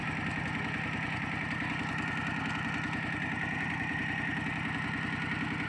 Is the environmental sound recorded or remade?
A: recorded